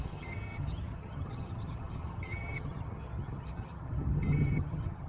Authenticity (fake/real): fake